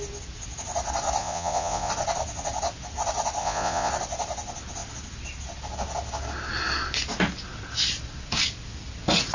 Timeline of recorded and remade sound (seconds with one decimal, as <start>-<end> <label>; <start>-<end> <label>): 0.0-1.2 recorded; 1.2-1.9 remade; 1.9-3.4 recorded; 3.4-3.9 remade; 3.9-9.3 recorded